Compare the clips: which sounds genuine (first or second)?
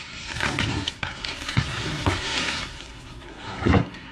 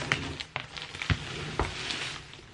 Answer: second